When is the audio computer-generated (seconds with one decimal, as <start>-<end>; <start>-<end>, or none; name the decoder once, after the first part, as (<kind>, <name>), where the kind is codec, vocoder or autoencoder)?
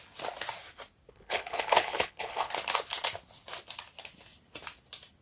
1.1-2.5 (codec, HILCodec)